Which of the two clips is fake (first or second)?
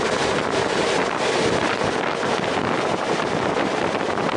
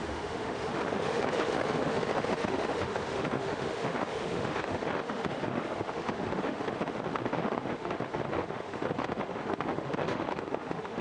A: second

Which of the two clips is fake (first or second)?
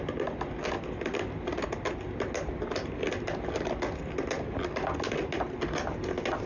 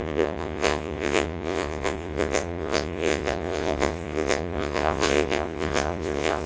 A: second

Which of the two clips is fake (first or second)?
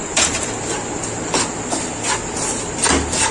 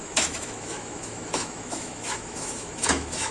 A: second